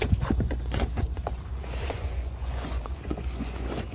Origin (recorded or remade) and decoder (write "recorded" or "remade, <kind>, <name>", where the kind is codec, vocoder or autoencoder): remade, vocoder, Vocos